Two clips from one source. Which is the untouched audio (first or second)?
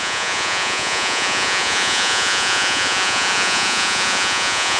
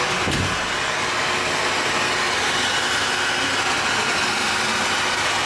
second